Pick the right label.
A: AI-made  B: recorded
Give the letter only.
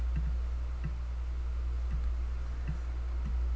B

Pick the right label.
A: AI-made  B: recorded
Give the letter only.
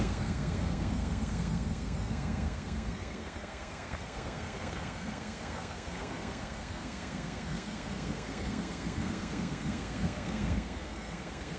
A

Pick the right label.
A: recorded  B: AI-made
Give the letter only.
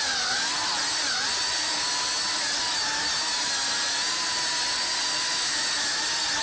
A